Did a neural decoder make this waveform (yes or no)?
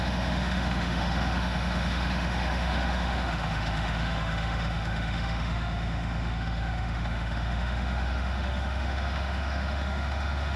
yes